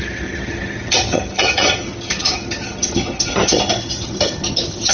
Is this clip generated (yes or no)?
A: yes